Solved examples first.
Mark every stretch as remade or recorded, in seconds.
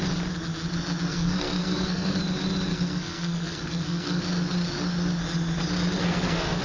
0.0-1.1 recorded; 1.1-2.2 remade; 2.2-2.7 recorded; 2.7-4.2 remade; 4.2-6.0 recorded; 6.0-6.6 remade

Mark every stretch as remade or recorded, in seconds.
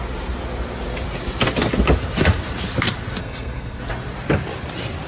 0.0-3.2 recorded; 3.2-3.8 remade; 3.8-5.1 recorded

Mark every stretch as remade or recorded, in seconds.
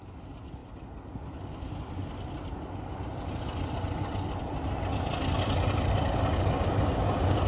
0.0-7.5 recorded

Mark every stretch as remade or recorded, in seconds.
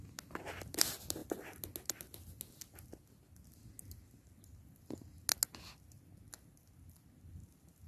0.0-7.9 recorded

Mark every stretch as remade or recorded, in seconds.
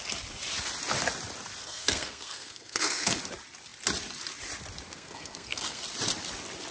0.0-1.6 recorded; 1.6-3.2 remade; 3.2-4.9 recorded; 4.9-5.8 remade; 5.8-6.7 recorded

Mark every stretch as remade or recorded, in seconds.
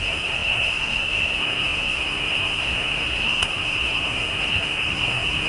0.0-5.5 remade